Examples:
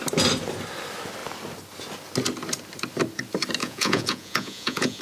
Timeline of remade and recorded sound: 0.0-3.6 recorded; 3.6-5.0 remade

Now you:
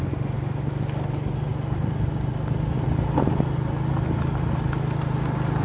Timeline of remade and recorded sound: 0.0-5.6 recorded